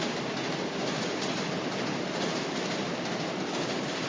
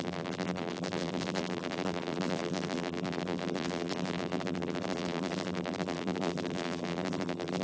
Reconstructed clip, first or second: second